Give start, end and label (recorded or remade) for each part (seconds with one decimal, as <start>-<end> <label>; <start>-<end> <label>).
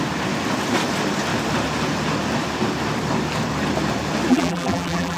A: 0.0-4.3 recorded; 4.3-5.2 remade